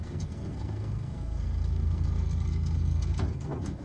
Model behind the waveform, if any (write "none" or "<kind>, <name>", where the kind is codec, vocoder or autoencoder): codec, SNAC